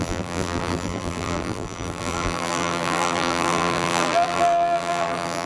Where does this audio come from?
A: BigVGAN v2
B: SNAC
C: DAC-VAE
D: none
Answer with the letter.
A